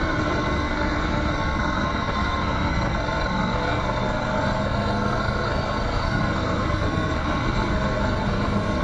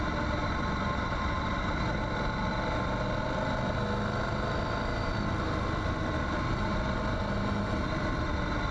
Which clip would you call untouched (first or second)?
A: second